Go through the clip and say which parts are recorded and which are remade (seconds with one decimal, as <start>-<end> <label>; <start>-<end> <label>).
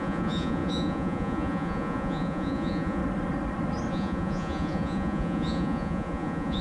0.0-3.0 remade; 3.0-3.9 recorded; 3.9-6.6 remade